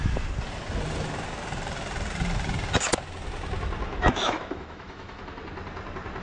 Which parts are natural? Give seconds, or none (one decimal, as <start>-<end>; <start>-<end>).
0.0-3.9; 5.2-6.2